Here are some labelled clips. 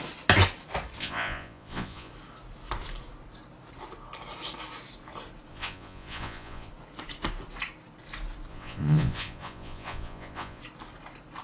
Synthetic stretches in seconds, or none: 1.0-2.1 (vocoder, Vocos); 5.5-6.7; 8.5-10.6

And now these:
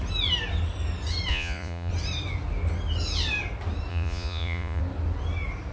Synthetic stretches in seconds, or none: 1.3-1.9 (vocoder, Vocos); 3.9-4.8

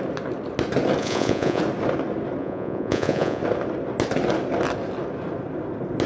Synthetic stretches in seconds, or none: 1.0-1.6 (vocoder, Vocos); 2.4-3.4

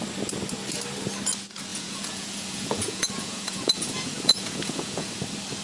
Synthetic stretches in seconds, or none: 1.7-5.1 (vocoder, Vocos)

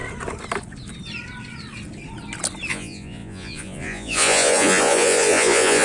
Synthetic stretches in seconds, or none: 2.7-5.8 (vocoder, Vocos)

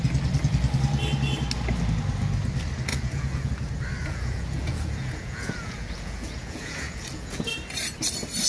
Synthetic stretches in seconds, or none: 2.9-3.5 (vocoder, Vocos); 4.0-7.5